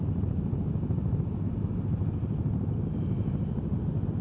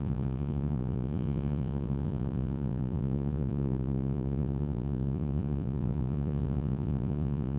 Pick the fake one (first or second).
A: second